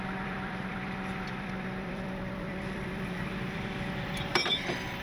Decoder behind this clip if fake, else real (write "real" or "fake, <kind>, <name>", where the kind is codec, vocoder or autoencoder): fake, vocoder, BigVGAN v2